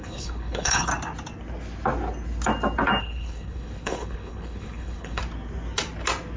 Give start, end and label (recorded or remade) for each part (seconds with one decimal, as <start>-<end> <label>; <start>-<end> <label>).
0.0-0.9 remade; 0.9-3.0 recorded; 3.0-5.2 remade; 5.2-6.4 recorded